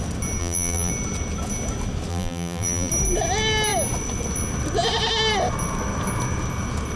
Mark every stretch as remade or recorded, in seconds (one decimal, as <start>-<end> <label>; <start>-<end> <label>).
0.0-0.4 recorded; 0.4-0.9 remade; 0.9-2.1 recorded; 2.1-2.9 remade; 2.9-7.0 recorded